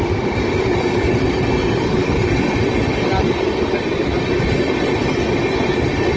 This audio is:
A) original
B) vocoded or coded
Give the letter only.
A